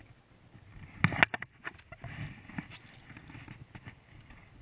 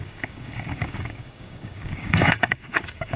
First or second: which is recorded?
first